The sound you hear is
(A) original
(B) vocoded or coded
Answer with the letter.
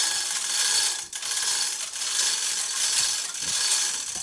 A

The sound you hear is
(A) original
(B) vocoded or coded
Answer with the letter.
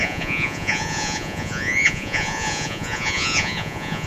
B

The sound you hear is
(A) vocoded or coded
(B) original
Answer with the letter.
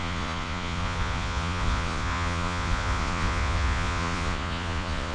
A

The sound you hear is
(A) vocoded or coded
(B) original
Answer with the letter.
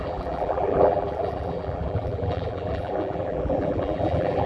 A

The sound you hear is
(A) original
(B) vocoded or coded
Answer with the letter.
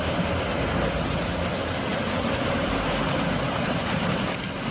A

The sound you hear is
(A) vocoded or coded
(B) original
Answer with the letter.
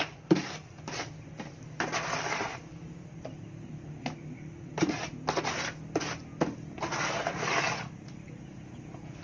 B